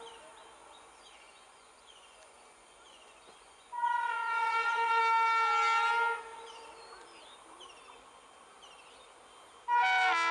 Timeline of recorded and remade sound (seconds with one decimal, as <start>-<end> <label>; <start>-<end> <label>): 0.0-0.6 recorded; 0.6-5.0 remade; 5.0-10.3 recorded